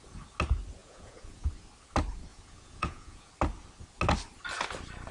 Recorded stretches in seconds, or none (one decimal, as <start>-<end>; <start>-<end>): 0.0-0.8; 1.5-2.3; 3.3-5.1